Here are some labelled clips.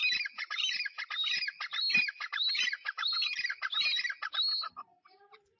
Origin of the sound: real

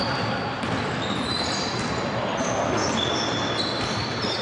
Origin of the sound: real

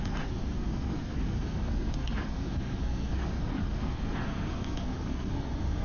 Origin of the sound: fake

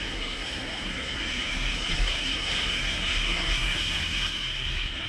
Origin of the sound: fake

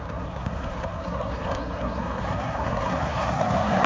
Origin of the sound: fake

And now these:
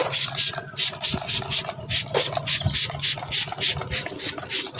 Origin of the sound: real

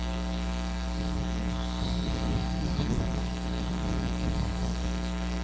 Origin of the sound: fake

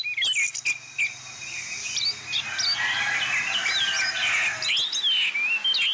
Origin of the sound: real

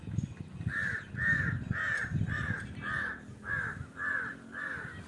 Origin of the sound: real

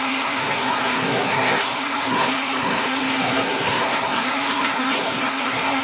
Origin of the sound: fake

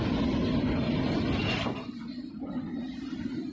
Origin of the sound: real